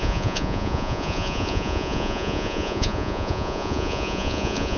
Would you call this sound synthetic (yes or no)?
yes